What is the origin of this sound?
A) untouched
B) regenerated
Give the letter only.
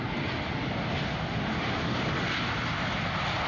A